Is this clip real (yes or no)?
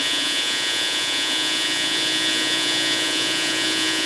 no